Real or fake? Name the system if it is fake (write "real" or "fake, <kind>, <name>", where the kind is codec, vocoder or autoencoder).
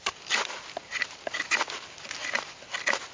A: real